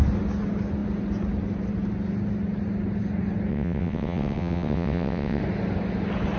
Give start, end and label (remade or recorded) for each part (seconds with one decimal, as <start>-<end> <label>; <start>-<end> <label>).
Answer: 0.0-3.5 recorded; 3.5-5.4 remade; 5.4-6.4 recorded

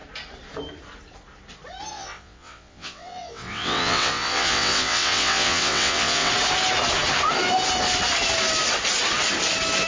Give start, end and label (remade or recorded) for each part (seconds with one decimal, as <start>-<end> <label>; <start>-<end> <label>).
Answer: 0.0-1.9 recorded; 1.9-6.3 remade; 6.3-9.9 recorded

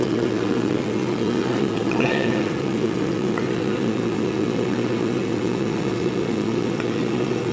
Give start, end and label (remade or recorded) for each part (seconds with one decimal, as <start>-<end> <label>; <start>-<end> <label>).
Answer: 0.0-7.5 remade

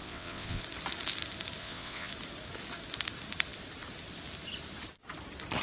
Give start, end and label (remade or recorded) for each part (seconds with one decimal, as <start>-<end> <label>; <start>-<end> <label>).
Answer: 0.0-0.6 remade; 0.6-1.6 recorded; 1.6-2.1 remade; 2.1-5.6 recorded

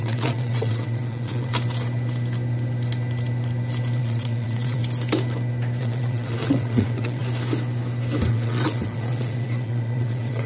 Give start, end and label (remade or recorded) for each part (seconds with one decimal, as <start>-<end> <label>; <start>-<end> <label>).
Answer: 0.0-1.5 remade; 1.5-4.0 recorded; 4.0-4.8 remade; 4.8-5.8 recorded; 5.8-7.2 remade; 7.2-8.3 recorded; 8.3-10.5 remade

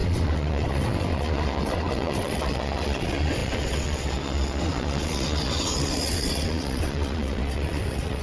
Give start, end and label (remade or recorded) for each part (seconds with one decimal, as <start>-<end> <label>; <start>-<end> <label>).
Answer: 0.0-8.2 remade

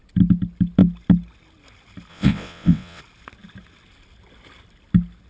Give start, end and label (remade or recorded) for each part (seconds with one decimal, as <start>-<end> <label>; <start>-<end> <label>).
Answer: 0.0-2.1 recorded; 2.1-3.0 remade; 3.0-5.3 recorded

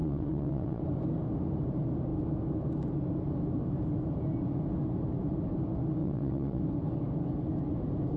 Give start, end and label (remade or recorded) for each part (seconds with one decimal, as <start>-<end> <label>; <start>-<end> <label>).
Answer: 0.0-0.8 remade; 0.8-6.0 recorded; 6.0-6.6 remade; 6.6-8.2 recorded